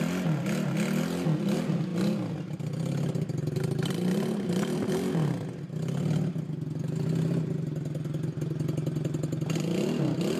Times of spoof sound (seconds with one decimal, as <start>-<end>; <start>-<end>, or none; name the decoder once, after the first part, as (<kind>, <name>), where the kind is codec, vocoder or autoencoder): none